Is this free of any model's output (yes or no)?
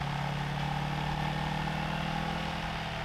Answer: yes